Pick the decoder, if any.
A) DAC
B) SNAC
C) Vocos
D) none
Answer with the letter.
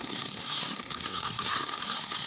B